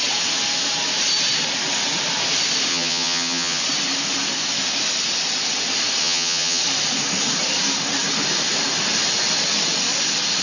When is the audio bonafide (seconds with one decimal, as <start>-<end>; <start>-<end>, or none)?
0.0-2.7; 3.6-6.0; 6.6-10.4